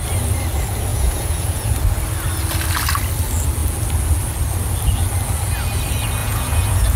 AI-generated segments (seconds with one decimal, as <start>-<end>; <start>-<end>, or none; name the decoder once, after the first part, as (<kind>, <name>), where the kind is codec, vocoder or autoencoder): 0.9-1.7 (vocoder, Vocos); 6.2-7.0